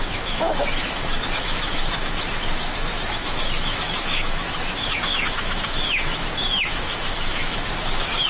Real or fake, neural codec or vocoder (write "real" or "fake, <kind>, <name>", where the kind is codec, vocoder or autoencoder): fake, autoencoder, DAC-VAE